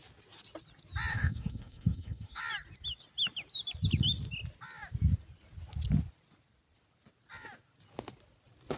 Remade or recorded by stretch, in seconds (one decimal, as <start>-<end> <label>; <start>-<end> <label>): 0.0-1.1 recorded; 1.1-2.4 remade; 2.4-8.8 recorded